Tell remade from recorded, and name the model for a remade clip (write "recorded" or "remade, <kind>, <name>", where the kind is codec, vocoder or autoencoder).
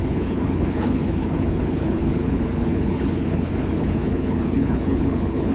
remade, codec, HILCodec